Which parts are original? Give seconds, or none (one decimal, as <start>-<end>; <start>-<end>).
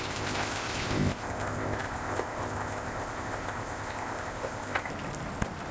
4.9-5.7